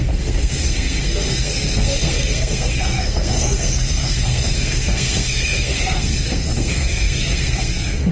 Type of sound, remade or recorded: remade